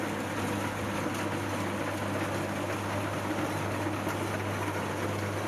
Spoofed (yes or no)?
no